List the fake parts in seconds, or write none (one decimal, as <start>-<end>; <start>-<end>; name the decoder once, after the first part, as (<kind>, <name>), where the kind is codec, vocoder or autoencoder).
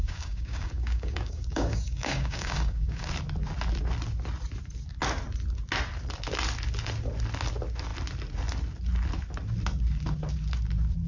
0.0-3.1 (codec, DAC)